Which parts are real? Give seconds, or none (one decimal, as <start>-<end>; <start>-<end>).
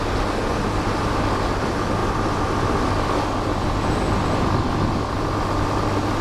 0.0-2.0; 5.7-6.2